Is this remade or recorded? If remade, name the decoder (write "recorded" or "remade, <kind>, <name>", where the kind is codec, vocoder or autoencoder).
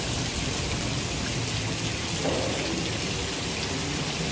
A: recorded